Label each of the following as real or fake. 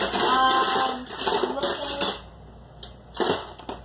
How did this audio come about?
real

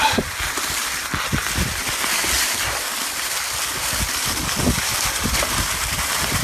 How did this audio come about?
real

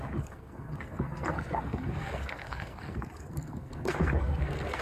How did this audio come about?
fake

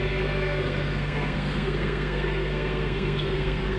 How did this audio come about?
fake